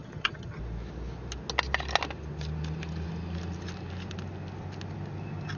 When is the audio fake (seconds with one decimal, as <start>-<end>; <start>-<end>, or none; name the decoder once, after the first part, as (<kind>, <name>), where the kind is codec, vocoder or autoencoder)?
0.0-0.6 (vocoder, HiFi-GAN)